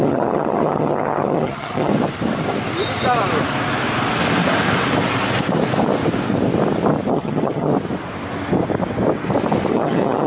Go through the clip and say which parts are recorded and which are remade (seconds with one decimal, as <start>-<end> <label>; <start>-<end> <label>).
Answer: 0.0-1.9 remade; 1.9-7.1 recorded; 7.1-7.7 remade; 7.7-9.7 recorded; 9.7-10.3 remade